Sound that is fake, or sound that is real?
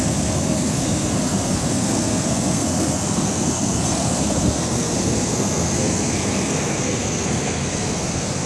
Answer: fake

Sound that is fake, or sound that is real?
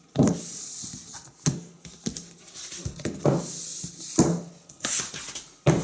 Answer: real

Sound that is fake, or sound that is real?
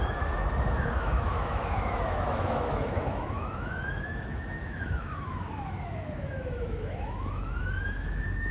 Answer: fake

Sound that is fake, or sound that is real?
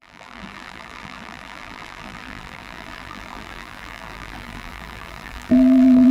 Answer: fake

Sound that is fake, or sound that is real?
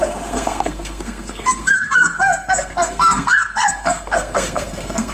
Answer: fake